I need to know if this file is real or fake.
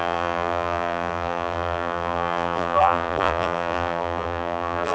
fake